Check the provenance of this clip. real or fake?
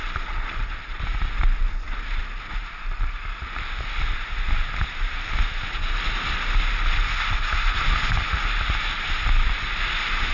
real